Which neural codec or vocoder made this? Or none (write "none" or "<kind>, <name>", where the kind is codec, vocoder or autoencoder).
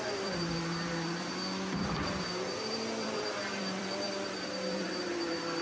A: vocoder, BigVGAN v2